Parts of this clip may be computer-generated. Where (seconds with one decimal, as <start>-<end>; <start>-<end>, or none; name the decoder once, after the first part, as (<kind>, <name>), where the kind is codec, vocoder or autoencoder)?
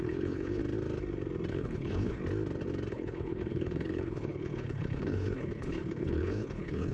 0.0-0.6 (codec, HILCodec); 1.5-2.2; 2.9-6.9